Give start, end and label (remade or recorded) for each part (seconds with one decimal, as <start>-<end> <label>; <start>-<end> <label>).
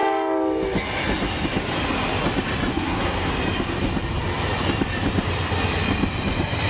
0.0-2.7 recorded; 2.7-3.3 remade; 3.3-6.7 recorded